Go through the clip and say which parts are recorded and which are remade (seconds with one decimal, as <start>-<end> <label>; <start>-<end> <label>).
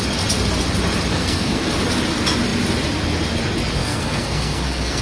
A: 0.0-1.1 recorded; 1.1-1.7 remade; 1.7-3.8 recorded; 3.8-5.0 remade